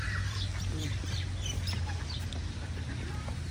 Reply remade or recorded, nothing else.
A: remade